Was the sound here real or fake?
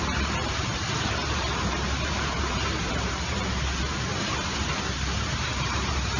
fake